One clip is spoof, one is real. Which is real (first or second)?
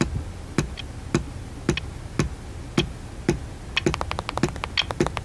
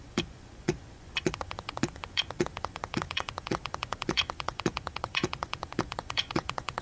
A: first